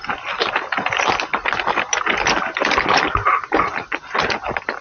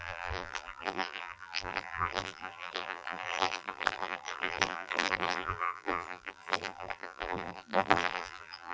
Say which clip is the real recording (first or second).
first